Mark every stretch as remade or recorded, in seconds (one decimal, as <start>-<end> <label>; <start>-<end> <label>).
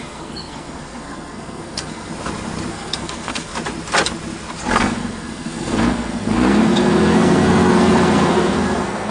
0.0-2.1 remade; 2.1-2.7 recorded; 2.7-3.5 remade; 3.5-4.8 recorded; 4.8-9.1 remade